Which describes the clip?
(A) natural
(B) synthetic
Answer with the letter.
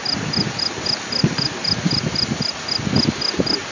A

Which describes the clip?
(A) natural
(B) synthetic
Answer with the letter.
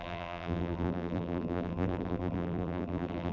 B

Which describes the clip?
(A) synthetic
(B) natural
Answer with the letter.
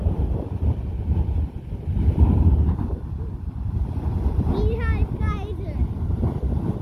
B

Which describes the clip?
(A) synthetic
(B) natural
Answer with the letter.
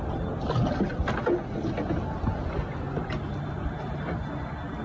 B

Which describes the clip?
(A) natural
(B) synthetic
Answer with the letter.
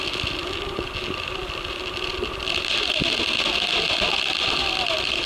A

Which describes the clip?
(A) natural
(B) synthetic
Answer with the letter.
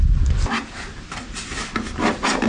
A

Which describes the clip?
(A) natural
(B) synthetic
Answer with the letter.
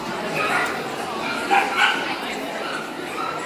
A